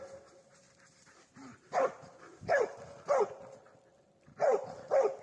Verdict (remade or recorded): recorded